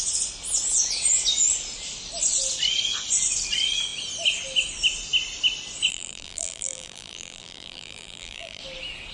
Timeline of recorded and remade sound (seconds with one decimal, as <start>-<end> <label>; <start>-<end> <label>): 0.0-5.9 recorded; 5.9-8.6 remade; 8.6-9.1 recorded